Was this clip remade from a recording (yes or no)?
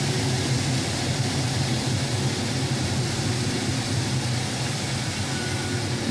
no